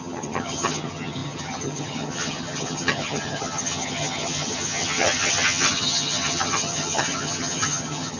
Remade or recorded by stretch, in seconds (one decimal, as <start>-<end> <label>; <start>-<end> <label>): 0.0-8.2 remade